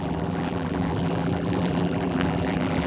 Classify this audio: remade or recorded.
remade